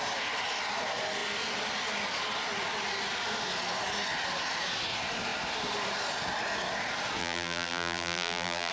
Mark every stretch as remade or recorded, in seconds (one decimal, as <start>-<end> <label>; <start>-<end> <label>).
0.0-7.2 recorded; 7.2-8.7 remade